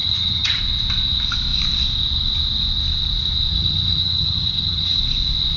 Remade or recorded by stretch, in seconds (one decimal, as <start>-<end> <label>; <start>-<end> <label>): 0.0-0.6 remade; 0.6-3.5 recorded; 3.5-5.0 remade; 5.0-5.6 recorded